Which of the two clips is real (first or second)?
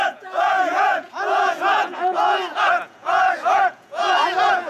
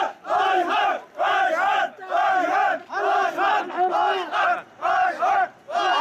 second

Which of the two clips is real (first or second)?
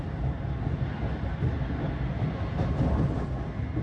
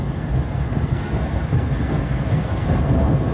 first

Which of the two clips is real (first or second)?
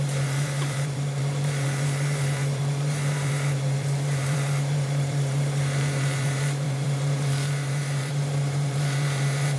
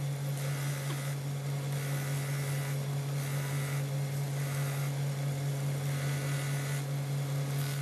second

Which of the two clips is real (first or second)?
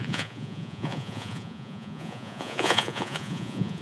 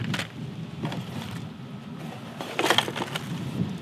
second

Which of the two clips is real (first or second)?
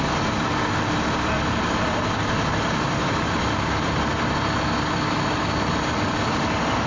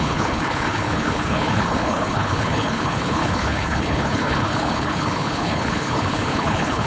first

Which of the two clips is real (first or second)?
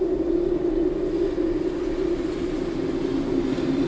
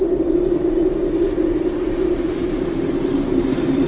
first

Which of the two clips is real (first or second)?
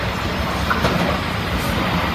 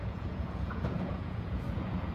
first